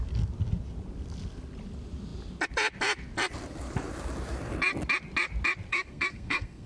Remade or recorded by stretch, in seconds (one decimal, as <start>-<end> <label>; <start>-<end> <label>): 0.0-5.7 recorded; 5.7-6.7 remade